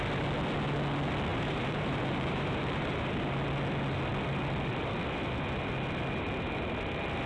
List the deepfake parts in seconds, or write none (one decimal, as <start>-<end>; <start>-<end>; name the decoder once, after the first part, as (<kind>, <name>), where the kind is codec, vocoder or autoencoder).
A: 1.3-3.1 (vocoder, BigVGAN v2)